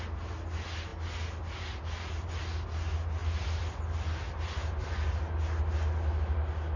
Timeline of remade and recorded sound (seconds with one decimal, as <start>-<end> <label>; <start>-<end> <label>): 0.0-6.8 recorded

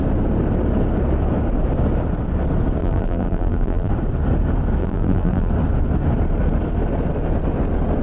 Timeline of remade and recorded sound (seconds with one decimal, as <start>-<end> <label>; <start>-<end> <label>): 0.0-2.8 recorded; 2.8-3.9 remade; 3.9-4.8 recorded; 4.8-5.5 remade; 5.5-8.0 recorded

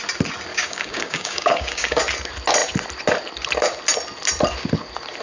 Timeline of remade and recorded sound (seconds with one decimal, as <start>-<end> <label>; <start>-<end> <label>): 0.0-0.5 recorded; 0.5-2.0 remade; 2.0-5.2 recorded

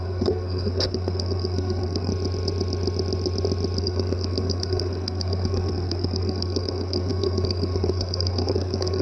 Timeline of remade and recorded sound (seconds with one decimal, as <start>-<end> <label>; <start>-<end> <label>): 0.0-2.1 remade; 2.1-3.8 recorded; 3.8-9.0 remade

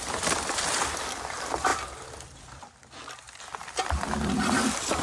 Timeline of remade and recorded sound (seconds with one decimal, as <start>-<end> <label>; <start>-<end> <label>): 0.0-5.0 remade